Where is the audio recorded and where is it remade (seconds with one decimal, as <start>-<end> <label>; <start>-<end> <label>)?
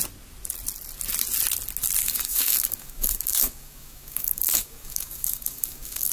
0.0-2.0 recorded; 2.0-6.1 remade